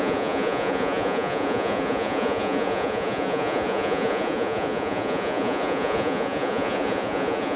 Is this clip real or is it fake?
fake